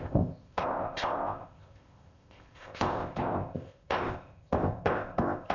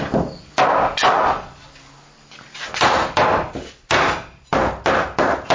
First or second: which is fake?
first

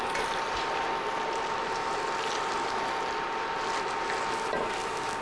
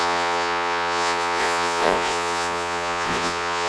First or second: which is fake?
second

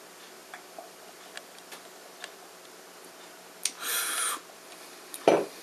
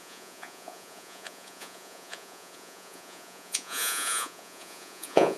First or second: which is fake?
second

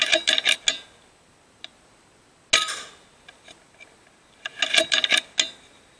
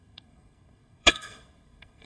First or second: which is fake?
second